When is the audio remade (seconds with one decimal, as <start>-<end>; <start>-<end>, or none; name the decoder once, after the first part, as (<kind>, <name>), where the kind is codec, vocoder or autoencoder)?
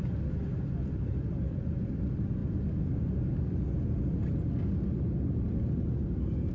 0.0-2.4 (vocoder, BigVGAN v2)